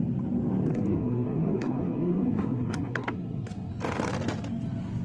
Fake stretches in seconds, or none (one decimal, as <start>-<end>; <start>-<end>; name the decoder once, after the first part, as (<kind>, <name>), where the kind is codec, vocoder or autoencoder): 0.7-3.7 (codec, SNAC)

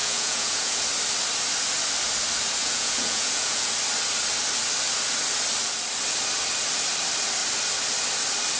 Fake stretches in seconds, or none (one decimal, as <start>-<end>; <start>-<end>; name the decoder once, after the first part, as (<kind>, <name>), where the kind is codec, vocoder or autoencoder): 0.0-0.8 (vocoder, Vocos); 2.6-3.7

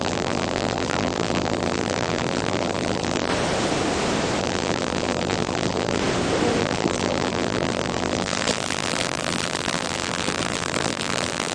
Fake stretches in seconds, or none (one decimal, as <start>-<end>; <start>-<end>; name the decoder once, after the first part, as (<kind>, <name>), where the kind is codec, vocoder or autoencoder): 0.0-3.3 (vocoder, BigVGAN v2); 4.4-6.0; 6.6-11.5

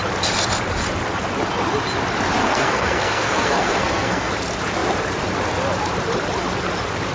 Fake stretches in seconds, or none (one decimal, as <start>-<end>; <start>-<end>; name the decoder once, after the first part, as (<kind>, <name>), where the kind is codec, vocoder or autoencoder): 2.4-4.3 (codec, SNAC)